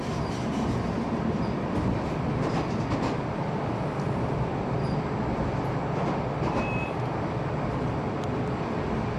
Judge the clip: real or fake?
fake